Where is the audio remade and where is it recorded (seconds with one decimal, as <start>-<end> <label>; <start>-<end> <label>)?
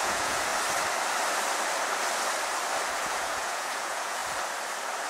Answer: 0.0-0.5 remade; 0.5-3.0 recorded; 3.0-4.2 remade; 4.2-5.1 recorded